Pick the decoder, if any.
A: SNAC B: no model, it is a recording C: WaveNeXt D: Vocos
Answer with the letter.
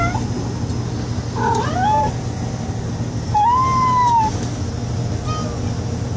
B